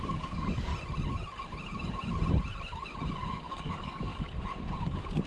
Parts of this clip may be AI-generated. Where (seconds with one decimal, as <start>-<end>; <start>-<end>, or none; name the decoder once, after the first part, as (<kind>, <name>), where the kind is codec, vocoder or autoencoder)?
0.0-0.7 (codec, DAC); 3.3-4.1